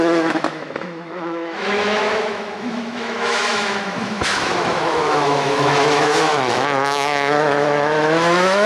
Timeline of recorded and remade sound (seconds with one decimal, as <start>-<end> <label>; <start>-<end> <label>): 0.0-8.7 remade